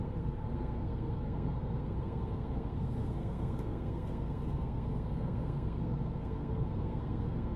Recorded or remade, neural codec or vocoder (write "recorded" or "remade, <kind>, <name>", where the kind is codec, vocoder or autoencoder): remade, codec, SNAC